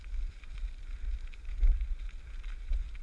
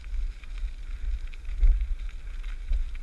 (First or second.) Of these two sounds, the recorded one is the second